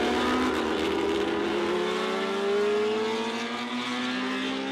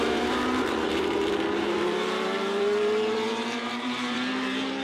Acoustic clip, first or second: first